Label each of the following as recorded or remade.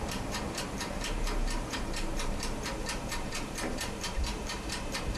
remade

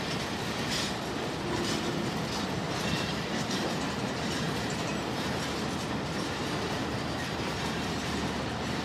remade